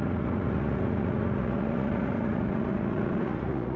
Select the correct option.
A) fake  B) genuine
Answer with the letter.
A